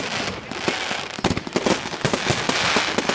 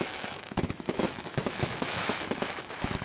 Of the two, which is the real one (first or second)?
first